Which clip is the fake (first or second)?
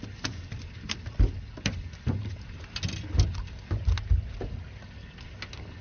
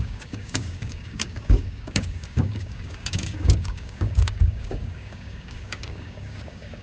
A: second